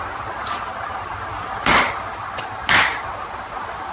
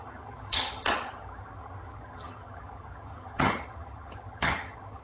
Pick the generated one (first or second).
second